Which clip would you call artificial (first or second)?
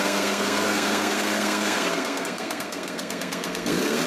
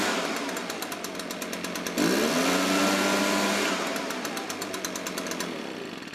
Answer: first